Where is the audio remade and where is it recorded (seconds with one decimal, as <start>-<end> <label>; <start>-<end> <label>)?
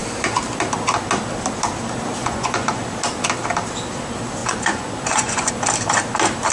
0.0-2.2 recorded; 2.2-2.8 remade; 2.8-4.4 recorded; 4.4-5.5 remade; 5.5-6.5 recorded